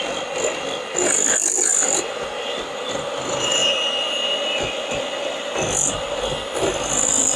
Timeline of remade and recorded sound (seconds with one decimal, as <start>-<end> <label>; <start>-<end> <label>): 0.0-7.4 recorded